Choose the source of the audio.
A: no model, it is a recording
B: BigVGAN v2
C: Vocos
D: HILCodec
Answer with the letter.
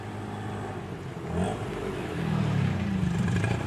A